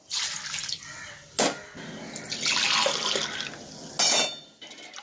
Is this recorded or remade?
recorded